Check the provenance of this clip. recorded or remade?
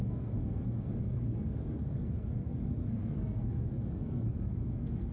remade